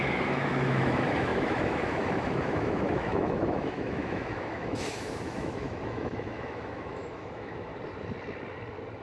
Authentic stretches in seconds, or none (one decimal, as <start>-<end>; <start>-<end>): 7.7-9.0